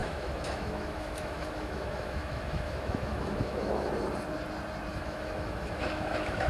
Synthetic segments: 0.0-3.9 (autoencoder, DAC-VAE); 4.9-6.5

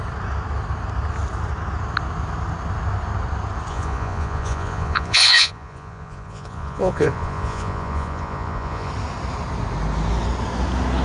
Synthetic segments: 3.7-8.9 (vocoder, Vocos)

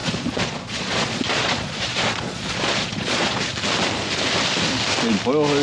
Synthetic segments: 0.0-3.4 (vocoder, Vocos)

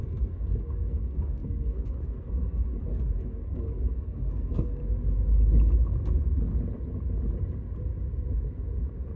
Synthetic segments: 0.0-4.8 (codec, SNAC)

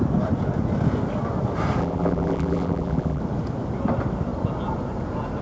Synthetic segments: 1.8-3.2 (vocoder, BigVGAN v2)